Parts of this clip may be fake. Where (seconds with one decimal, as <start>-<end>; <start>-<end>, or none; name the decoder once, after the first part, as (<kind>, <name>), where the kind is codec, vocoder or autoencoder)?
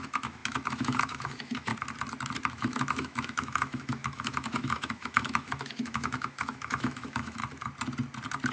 0.0-1.7 (autoencoder, DAC-VAE); 2.5-7.4